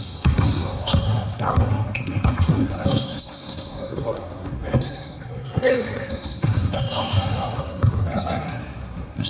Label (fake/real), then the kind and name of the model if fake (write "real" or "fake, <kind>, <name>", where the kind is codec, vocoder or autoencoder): fake, codec, SNAC